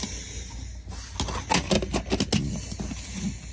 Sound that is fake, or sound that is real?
real